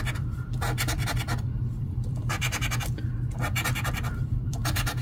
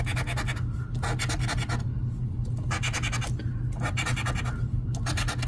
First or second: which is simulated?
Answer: first